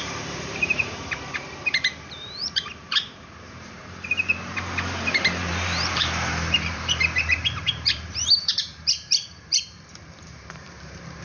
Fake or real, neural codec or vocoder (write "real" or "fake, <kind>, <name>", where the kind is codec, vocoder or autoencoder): fake, vocoder, BigVGAN v2